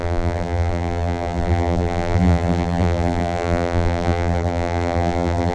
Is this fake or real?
fake